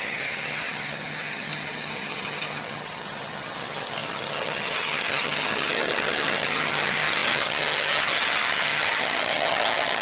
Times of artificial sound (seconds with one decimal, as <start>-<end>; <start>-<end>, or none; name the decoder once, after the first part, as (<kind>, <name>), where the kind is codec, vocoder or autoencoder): 0.0-10.0 (vocoder, HiFi-GAN)